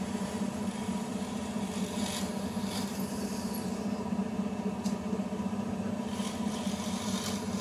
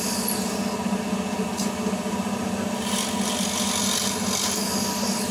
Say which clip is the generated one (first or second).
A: first